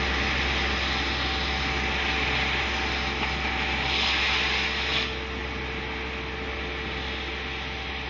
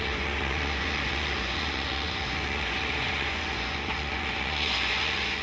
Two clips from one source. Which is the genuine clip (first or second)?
first